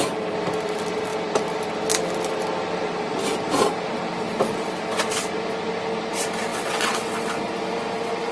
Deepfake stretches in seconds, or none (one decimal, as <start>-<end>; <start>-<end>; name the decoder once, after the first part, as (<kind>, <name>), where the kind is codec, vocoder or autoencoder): 6.5-7.1 (vocoder, WaveNeXt)